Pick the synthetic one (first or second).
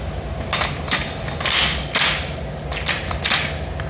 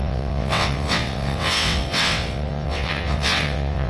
second